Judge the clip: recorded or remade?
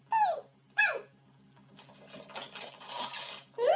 recorded